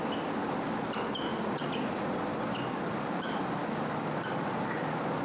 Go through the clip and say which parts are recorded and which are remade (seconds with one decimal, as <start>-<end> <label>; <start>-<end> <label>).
0.0-1.3 recorded; 1.3-2.2 remade; 2.2-5.2 recorded